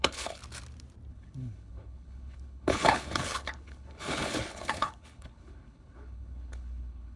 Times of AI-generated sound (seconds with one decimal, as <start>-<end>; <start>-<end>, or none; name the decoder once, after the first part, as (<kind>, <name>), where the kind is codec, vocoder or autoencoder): 0.0-0.4 (codec, HILCodec); 1.1-7.2